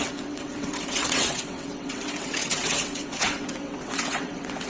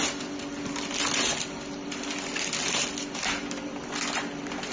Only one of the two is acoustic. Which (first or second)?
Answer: second